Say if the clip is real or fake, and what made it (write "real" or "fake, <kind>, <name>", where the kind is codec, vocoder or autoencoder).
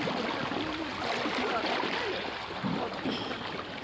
real